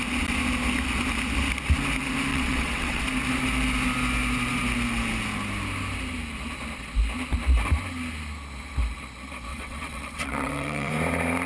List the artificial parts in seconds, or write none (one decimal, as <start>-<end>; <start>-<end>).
2.3-3.0; 9.5-10.9